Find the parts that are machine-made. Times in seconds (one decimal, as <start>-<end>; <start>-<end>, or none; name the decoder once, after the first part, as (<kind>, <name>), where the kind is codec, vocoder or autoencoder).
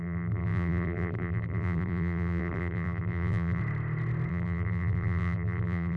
0.0-3.6 (vocoder, BigVGAN v2); 4.3-6.0